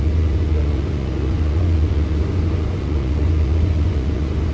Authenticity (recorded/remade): remade